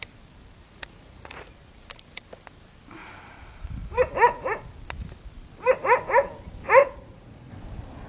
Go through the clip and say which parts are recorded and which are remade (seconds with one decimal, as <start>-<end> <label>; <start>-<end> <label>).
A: 0.0-0.6 recorded; 0.6-1.5 remade; 1.5-6.8 recorded; 6.8-7.5 remade; 7.5-8.1 recorded